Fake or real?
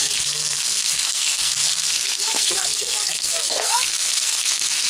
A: fake